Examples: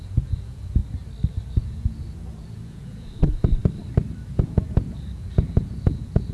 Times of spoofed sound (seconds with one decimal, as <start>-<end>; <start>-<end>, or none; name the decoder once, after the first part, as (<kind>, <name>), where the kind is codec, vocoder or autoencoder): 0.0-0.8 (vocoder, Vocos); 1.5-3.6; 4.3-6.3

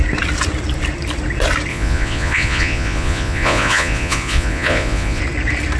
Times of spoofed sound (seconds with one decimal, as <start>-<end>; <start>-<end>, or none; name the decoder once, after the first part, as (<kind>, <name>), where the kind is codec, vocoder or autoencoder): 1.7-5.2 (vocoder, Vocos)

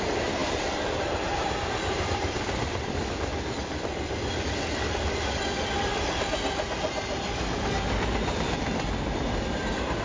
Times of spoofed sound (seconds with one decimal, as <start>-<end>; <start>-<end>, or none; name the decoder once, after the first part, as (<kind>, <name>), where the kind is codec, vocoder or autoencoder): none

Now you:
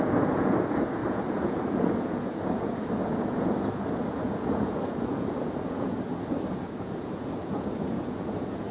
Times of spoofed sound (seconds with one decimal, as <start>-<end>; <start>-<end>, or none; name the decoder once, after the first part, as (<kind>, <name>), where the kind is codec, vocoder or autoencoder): 0.0-8.7 (vocoder, Vocos)

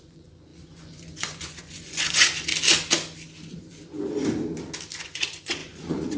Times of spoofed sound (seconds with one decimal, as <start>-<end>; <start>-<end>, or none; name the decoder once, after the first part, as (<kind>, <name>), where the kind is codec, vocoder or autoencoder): 0.0-2.5 (vocoder, Vocos); 5.0-6.2

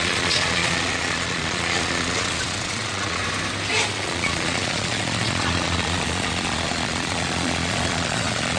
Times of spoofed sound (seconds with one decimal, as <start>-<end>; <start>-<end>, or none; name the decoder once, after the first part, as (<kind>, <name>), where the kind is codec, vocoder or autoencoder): 0.0-3.2 (vocoder, Vocos); 3.9-8.6

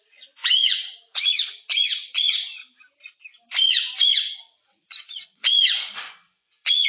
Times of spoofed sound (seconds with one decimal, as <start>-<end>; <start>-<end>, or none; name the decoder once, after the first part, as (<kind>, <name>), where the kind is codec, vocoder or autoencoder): 0.0-2.6 (vocoder, Vocos); 3.6-6.9